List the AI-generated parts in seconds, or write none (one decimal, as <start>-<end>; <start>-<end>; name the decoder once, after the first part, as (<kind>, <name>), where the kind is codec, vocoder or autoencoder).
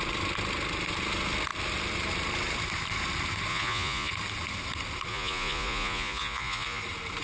3.5-4.1 (vocoder, Vocos); 5.1-6.8